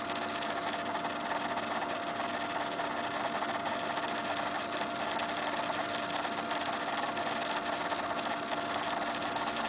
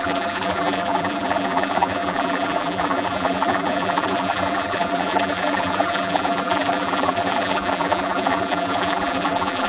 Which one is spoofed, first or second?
second